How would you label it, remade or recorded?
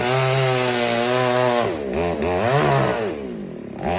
recorded